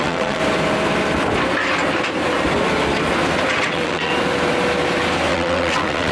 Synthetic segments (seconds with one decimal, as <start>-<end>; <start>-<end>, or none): 0.0-0.4; 3.6-4.1; 5.3-6.1